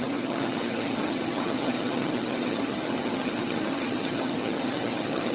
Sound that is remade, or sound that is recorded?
remade